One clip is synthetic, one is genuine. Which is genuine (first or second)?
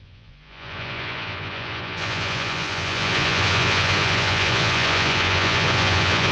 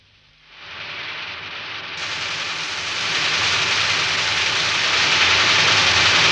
second